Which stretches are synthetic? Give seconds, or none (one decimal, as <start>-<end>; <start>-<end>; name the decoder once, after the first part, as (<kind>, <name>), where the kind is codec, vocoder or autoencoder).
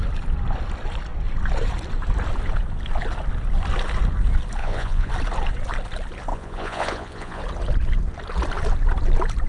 4.6-5.1 (vocoder, Vocos); 6.3-7.4